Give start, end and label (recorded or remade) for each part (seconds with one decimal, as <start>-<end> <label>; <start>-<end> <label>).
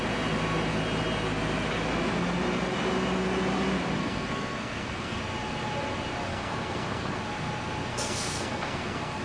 0.0-4.0 recorded; 4.0-5.2 remade; 5.2-6.3 recorded; 6.3-7.2 remade; 7.2-7.9 recorded; 7.9-9.2 remade